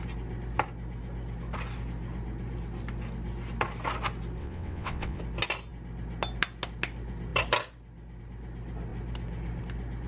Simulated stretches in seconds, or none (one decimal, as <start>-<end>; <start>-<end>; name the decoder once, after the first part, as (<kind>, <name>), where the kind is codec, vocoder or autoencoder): 4.4-5.2 (vocoder, WaveNeXt)

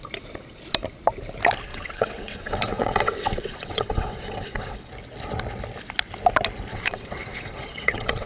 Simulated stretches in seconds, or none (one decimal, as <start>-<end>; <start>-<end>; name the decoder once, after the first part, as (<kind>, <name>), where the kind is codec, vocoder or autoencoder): 1.7-4.9 (vocoder, WaveNeXt); 6.7-8.3